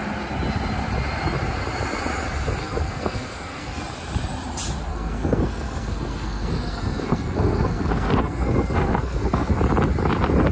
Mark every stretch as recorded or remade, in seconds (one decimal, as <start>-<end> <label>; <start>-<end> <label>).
0.0-2.6 recorded; 2.6-3.8 remade; 3.8-4.9 recorded; 4.9-9.5 remade; 9.5-10.5 recorded